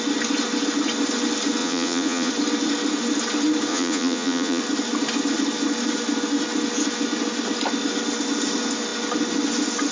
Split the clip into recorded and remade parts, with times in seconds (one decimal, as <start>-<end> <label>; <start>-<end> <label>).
0.0-1.6 recorded; 1.6-2.3 remade; 2.3-3.7 recorded; 3.7-4.6 remade; 4.6-9.9 recorded